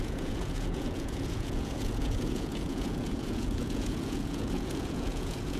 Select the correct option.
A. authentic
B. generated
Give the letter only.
B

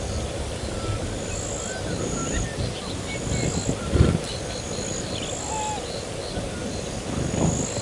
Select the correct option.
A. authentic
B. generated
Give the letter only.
A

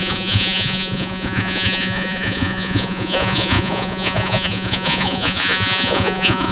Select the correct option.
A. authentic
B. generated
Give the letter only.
B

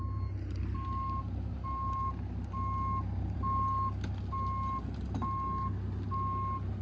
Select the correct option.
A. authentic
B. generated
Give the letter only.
A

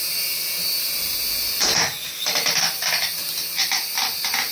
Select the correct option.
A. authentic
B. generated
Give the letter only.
A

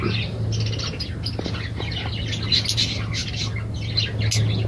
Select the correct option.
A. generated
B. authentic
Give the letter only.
B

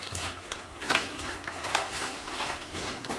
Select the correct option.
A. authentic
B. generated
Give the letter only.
B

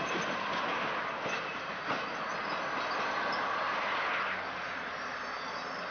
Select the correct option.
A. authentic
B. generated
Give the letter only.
A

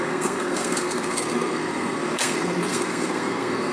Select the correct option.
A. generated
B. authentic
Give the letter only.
A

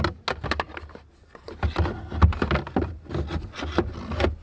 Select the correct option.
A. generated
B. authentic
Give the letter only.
B